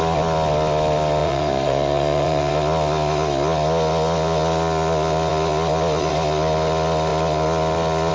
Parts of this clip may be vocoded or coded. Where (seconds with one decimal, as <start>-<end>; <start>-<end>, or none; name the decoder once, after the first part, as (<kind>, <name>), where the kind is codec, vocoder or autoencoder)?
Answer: 1.2-2.5 (vocoder, Vocos)

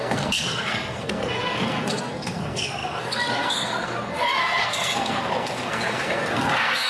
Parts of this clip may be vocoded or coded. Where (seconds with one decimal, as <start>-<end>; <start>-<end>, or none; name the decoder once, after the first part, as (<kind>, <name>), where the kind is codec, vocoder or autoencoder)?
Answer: 0.0-6.9 (codec, SNAC)

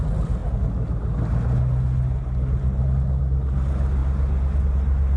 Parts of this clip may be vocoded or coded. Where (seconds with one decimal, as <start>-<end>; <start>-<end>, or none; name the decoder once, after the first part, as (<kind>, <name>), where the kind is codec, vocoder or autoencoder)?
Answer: none

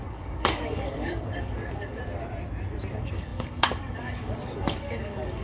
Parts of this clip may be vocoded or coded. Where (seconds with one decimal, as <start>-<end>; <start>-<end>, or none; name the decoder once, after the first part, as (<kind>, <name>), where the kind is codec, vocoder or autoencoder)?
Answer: 0.0-2.0 (codec, DAC); 2.9-5.4

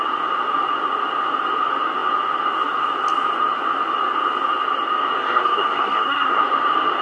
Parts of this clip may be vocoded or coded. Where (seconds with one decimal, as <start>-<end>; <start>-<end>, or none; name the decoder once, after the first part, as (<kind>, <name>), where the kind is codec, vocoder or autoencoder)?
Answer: 5.2-6.4 (codec, SNAC)

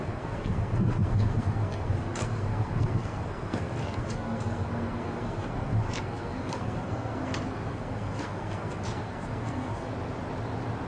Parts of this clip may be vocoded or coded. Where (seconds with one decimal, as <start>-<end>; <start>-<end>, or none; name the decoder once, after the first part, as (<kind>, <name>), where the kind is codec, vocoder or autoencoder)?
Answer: 0.0-9.9 (codec, SNAC)

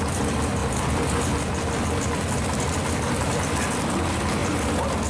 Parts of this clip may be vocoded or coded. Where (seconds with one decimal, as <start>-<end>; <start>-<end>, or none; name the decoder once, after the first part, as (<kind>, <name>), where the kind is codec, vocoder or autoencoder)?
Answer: 0.6-3.7 (vocoder, BigVGAN v2)

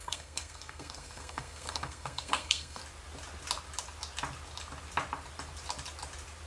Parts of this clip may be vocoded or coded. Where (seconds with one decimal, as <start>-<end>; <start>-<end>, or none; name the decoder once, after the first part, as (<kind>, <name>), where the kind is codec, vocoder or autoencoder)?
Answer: 0.0-2.8 (codec, SNAC)